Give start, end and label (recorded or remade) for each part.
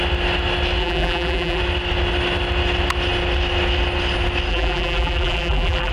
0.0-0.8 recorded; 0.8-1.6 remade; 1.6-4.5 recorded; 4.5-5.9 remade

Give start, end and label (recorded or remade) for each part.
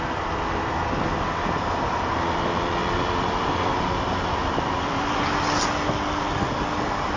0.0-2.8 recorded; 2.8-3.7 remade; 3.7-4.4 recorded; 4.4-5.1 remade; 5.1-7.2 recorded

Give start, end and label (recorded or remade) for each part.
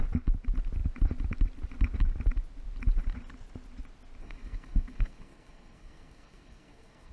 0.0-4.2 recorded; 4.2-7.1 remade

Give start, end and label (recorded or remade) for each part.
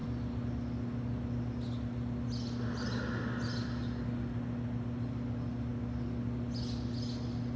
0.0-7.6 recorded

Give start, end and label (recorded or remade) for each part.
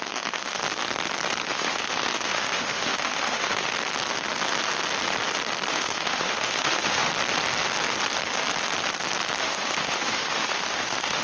0.0-0.6 remade; 0.6-1.5 recorded; 1.5-3.7 remade; 3.7-5.7 recorded; 5.7-7.1 remade; 7.1-9.4 recorded; 9.4-11.2 remade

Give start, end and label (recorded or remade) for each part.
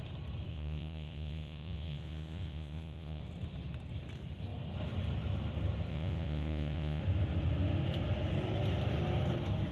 0.0-0.5 recorded; 0.5-3.2 remade; 3.2-5.9 recorded; 5.9-7.0 remade; 7.0-9.7 recorded